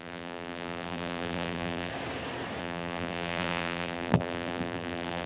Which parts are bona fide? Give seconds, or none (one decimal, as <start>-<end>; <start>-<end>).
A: 1.9-2.6